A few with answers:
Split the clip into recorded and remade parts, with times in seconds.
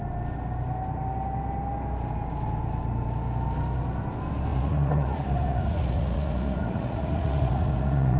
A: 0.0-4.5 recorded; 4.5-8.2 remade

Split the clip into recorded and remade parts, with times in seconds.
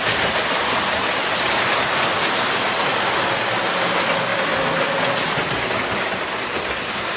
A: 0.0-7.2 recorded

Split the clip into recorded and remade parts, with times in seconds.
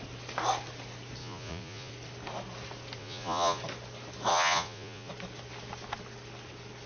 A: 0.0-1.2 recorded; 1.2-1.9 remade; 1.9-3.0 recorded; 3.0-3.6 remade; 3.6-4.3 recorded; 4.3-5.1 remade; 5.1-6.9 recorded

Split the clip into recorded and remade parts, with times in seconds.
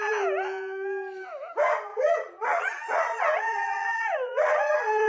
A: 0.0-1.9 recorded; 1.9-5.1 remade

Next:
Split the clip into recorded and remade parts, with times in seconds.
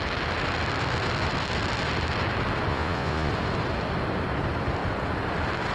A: 0.0-2.7 recorded; 2.7-3.3 remade; 3.3-5.7 recorded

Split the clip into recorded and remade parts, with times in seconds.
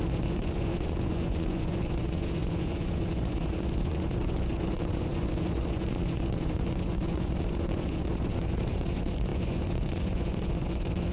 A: 0.0-11.1 remade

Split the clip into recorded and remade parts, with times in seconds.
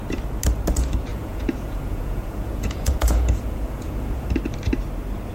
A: 0.0-1.1 recorded; 1.1-4.3 remade; 4.3-5.3 recorded